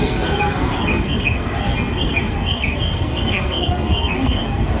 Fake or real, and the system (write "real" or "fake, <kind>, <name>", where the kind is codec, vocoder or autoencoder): fake, codec, SNAC